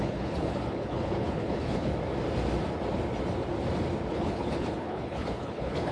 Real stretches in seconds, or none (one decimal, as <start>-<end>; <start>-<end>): 1.9-4.1